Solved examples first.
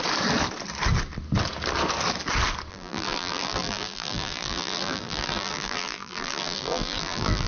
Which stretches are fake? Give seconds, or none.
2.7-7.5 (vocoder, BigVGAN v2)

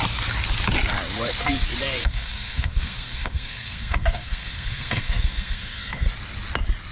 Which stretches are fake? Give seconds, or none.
2.0-6.1 (codec, SNAC)

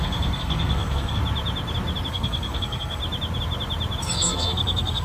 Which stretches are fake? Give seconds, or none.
0.0-1.2 (codec, SNAC); 2.1-3.0; 4.0-5.0

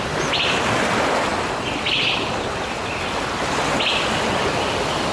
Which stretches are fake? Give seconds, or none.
none

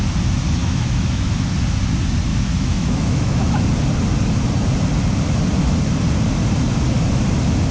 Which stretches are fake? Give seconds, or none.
0.6-1.4 (autoencoder, DAC-VAE); 2.3-3.6

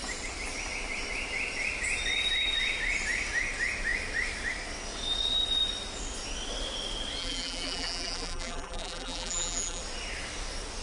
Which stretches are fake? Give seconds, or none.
7.2-9.8 (vocoder, BigVGAN v2)

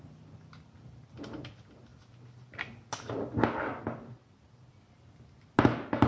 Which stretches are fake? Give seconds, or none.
none

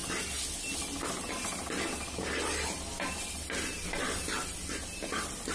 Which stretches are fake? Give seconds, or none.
none